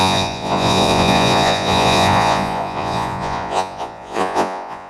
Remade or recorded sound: remade